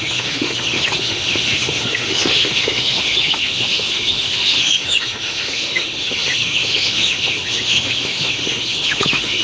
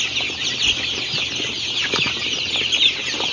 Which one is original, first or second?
second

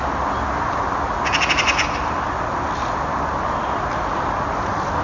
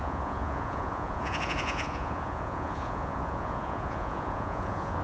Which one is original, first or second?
first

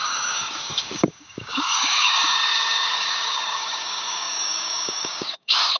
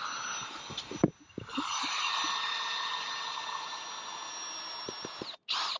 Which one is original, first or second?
second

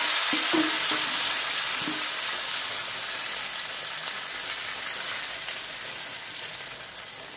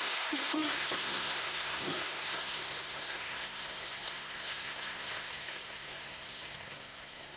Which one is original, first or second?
first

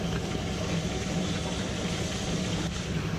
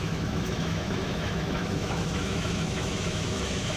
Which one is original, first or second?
first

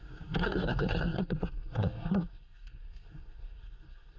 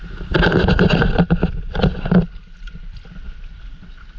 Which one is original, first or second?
second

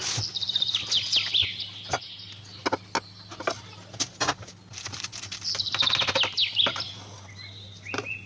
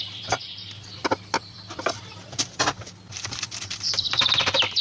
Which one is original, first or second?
first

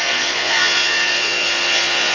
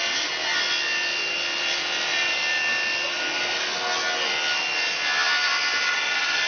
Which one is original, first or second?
second